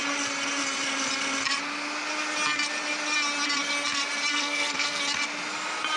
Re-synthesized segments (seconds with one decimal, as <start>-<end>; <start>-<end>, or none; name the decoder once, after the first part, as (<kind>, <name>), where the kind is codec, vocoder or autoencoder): 4.3-5.0 (codec, SNAC)